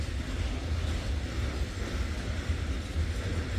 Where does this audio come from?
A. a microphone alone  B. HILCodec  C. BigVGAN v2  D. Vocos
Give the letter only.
A